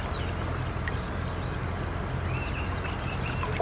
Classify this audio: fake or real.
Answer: real